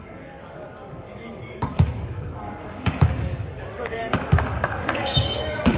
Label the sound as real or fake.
fake